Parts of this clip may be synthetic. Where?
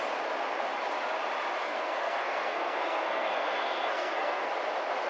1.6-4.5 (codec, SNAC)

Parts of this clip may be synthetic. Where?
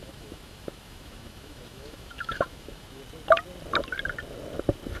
0.0-3.0 (autoencoder, DAC-VAE)